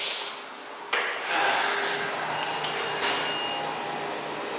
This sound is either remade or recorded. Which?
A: recorded